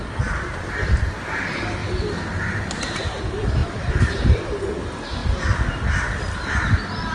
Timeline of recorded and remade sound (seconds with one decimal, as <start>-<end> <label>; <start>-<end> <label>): 0.0-1.8 recorded; 1.8-2.7 remade; 2.7-3.6 recorded; 3.6-4.4 remade; 4.4-7.1 recorded